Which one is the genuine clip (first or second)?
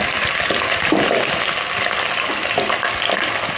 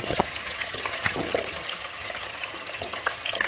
first